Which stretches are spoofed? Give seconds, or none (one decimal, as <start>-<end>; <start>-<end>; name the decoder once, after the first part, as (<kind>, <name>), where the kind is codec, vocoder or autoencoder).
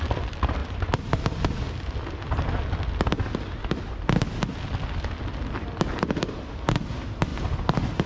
0.0-0.6 (vocoder, BigVGAN v2); 5.5-7.3